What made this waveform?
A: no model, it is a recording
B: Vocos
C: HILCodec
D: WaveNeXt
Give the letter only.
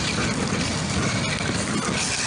A